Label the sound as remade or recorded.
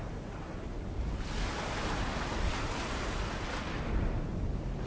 recorded